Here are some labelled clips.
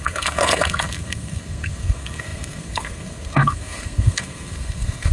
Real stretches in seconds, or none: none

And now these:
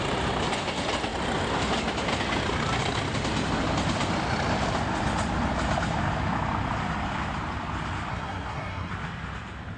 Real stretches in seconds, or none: 0.0-8.1; 8.9-9.8

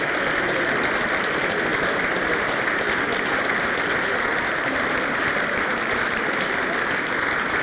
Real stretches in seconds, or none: 0.0-7.6